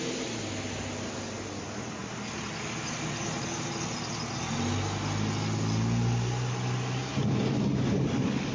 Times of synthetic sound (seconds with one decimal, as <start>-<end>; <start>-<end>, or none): none

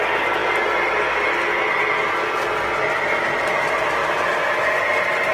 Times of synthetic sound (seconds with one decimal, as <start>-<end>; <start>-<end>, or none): none

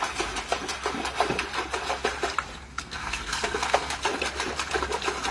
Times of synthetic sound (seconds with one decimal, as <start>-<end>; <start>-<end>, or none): 2.7-3.9

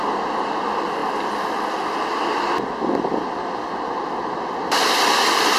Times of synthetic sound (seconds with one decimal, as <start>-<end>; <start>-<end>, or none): none

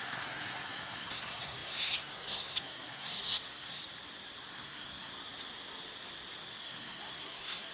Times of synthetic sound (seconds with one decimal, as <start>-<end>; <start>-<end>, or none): 0.0-3.8; 4.5-5.1; 6.6-7.7

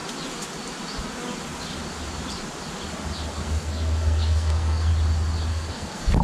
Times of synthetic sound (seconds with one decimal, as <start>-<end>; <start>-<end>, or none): 3.3-4.9; 5.5-6.2

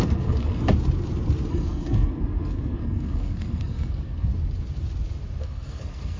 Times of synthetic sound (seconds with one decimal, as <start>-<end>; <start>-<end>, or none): 0.0-0.6; 1.5-4.3; 5.4-6.2